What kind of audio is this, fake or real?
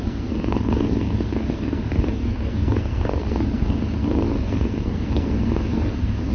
fake